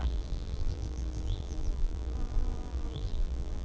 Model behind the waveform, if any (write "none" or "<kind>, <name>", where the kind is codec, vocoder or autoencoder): vocoder, BigVGAN v2